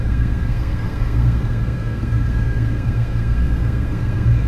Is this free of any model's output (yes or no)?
no